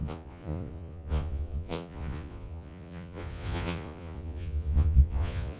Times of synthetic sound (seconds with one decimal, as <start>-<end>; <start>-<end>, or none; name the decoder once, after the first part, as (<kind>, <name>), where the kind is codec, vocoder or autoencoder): 0.0-5.6 (vocoder, Vocos)